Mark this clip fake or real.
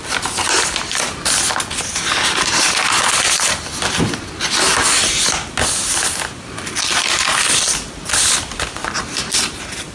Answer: real